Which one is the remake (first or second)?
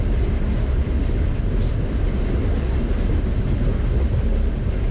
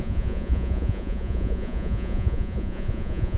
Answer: second